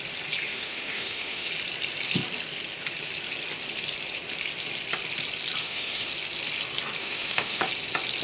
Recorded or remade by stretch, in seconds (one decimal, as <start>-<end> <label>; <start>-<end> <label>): 0.0-0.5 recorded; 0.5-1.5 remade; 1.5-5.6 recorded; 5.6-6.1 remade; 6.1-7.0 recorded; 7.0-7.7 remade; 7.7-8.2 recorded